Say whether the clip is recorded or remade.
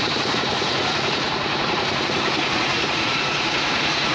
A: remade